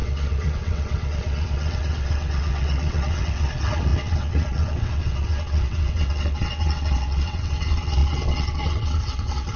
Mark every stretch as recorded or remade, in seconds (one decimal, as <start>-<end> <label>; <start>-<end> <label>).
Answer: 0.0-9.6 remade